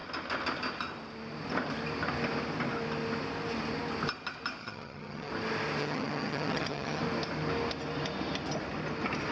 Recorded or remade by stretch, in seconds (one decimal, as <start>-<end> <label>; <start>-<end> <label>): 0.0-4.6 recorded; 4.6-5.3 remade; 5.3-5.8 recorded; 5.8-7.0 remade; 7.0-9.3 recorded